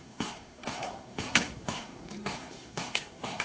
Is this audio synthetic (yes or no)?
yes